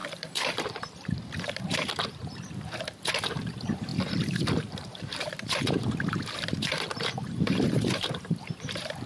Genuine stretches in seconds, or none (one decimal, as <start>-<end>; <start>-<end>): 2.2-3.4